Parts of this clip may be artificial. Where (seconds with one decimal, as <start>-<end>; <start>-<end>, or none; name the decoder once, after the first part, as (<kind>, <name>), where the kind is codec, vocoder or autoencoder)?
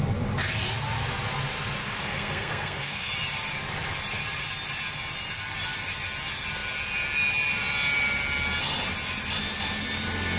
1.8-3.1 (codec, SNAC)